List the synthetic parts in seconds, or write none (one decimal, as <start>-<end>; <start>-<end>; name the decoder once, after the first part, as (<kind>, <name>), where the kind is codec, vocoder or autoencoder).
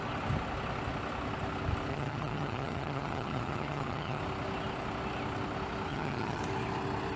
1.9-4.2 (vocoder, HiFi-GAN); 5.9-6.4